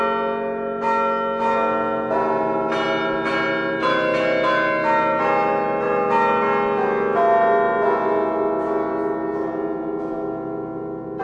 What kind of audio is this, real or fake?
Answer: real